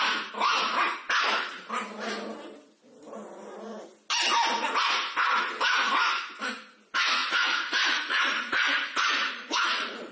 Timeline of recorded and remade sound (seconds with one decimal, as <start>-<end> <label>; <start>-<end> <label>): 0.0-7.2 recorded; 7.2-10.1 remade